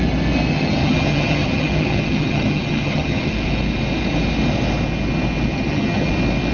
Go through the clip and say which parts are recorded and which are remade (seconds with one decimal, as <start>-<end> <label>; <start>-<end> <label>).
0.0-0.5 recorded; 0.5-3.3 remade; 3.3-5.5 recorded; 5.5-6.1 remade; 6.1-6.5 recorded